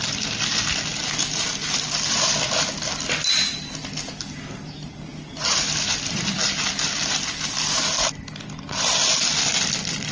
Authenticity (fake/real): real